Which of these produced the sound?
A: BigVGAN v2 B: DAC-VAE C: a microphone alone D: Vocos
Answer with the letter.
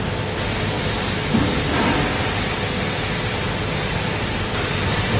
C